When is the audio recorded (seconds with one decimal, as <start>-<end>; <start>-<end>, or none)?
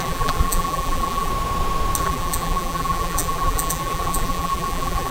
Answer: 1.3-2.0